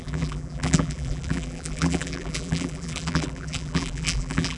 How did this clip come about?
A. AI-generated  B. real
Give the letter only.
A